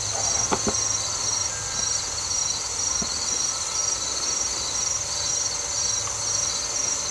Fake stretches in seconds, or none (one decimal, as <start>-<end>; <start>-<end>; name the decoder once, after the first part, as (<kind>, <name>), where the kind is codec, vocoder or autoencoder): none